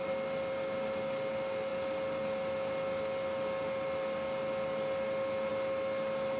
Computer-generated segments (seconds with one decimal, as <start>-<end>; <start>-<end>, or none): none